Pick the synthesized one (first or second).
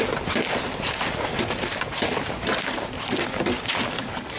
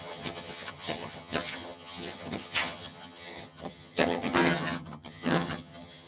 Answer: second